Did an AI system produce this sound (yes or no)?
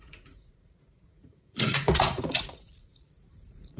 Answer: yes